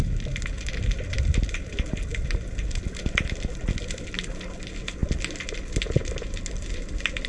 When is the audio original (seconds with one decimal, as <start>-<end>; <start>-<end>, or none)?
0.0-7.3